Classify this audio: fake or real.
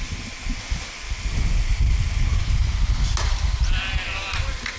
real